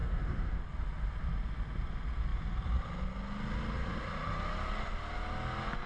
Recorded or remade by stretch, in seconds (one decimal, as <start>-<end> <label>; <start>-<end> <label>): 0.0-0.6 remade; 0.6-5.9 recorded